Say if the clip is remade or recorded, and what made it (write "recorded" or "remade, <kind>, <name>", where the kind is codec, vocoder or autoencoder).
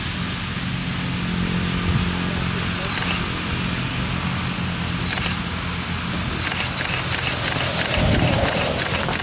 recorded